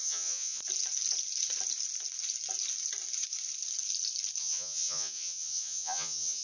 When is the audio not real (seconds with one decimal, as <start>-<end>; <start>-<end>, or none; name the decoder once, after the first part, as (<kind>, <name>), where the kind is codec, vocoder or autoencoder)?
0.0-0.6 (vocoder, Vocos); 4.4-6.4